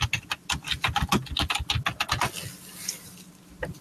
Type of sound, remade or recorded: recorded